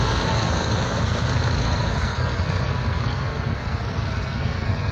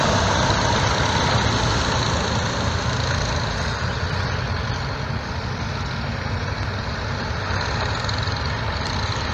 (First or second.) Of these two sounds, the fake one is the first